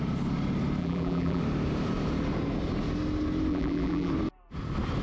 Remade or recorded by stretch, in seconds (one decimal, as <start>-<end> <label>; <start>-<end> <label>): 0.0-0.8 recorded; 0.8-1.4 remade; 1.4-3.5 recorded; 3.5-4.1 remade; 4.1-5.0 recorded